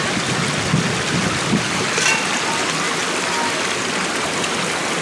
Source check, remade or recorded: recorded